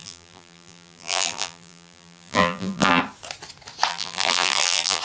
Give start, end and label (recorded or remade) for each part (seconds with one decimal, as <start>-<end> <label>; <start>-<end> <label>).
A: 0.0-3.0 remade; 3.0-3.9 recorded; 3.9-5.0 remade